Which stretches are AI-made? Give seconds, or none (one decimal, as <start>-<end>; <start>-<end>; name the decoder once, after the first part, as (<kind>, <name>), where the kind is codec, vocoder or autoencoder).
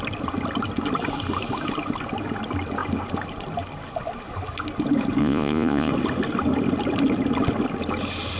5.2-5.9 (vocoder, Vocos)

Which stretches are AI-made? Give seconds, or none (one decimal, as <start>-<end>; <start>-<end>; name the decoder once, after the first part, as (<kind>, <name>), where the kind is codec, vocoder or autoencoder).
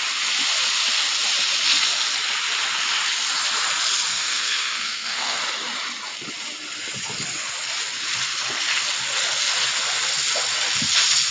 4.1-5.4 (codec, SNAC)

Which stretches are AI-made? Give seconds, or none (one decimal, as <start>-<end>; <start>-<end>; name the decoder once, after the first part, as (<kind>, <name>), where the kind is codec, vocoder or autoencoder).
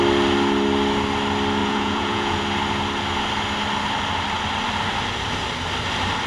1.6-2.4 (vocoder, Vocos)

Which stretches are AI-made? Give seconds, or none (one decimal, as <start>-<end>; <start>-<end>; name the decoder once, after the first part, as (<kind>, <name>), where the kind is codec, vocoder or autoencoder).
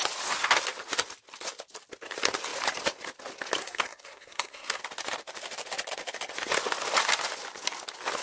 3.6-4.8 (codec, SNAC)